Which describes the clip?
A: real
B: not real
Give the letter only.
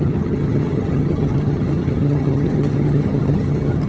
B